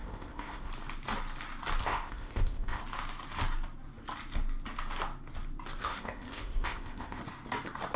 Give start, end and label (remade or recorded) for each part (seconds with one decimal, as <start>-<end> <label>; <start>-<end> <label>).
0.0-0.7 remade; 0.7-1.8 recorded; 1.8-2.8 remade; 2.8-5.8 recorded; 5.8-7.2 remade; 7.2-8.0 recorded